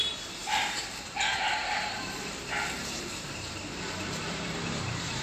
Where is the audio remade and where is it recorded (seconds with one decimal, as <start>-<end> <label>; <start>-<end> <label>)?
0.0-5.2 remade